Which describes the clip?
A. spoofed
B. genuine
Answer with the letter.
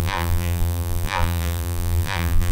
A